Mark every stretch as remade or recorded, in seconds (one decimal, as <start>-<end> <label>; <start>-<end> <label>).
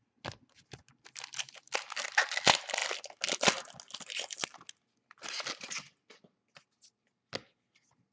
0.0-8.1 recorded